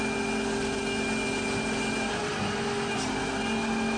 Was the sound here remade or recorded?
recorded